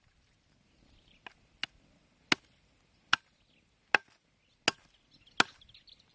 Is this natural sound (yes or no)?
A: yes